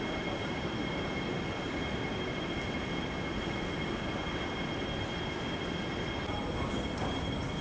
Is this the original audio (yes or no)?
yes